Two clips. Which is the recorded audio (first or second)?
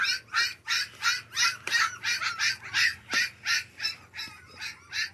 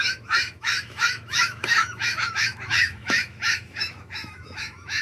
first